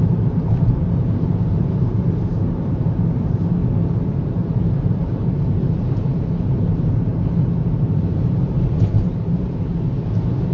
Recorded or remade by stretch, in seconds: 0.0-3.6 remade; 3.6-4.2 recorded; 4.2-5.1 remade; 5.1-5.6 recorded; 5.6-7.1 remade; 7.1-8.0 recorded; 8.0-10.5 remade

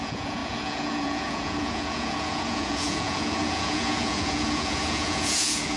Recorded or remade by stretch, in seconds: 0.0-5.8 remade

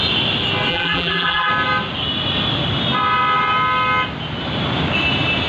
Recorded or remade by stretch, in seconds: 0.0-0.7 recorded; 0.7-1.5 remade; 1.5-5.5 recorded

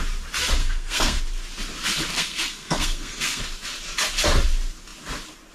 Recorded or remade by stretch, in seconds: 0.0-0.6 recorded; 0.6-1.2 remade; 1.2-2.1 recorded; 2.1-3.4 remade; 3.4-5.5 recorded

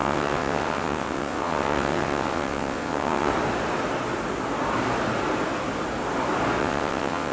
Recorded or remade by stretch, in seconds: 0.0-3.3 remade; 3.3-6.6 recorded; 6.6-7.3 remade

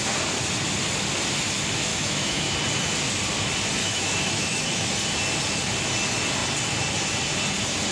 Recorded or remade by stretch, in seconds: 0.0-1.9 recorded; 1.9-2.5 remade; 2.5-3.8 recorded; 3.8-4.9 remade; 4.9-7.9 recorded

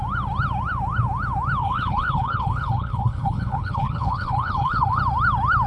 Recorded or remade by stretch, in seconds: 0.0-1.6 recorded; 1.6-5.0 remade; 5.0-5.7 recorded